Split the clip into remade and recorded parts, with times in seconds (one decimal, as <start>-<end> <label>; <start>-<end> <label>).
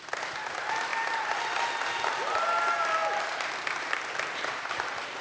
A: 0.0-0.9 recorded; 0.9-2.5 remade; 2.5-5.2 recorded